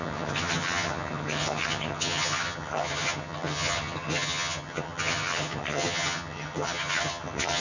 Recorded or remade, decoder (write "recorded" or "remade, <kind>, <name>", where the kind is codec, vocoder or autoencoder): remade, vocoder, HiFi-GAN